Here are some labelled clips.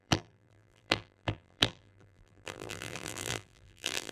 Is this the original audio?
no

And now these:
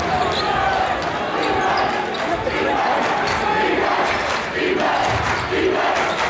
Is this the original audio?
yes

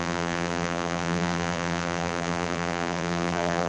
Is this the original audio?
no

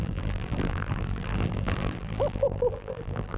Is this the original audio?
no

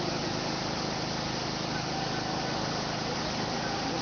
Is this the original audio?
yes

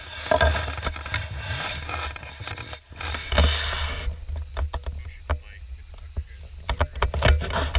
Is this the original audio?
yes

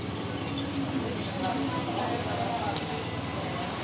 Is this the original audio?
yes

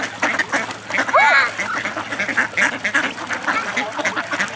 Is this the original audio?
yes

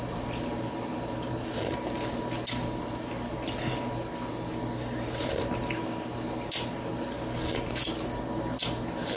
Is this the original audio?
yes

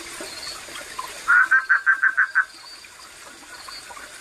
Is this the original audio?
yes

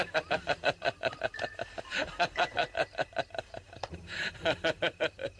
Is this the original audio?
no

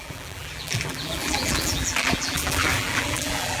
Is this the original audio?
no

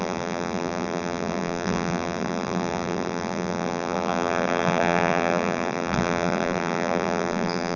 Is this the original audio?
no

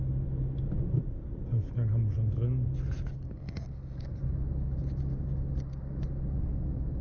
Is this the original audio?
yes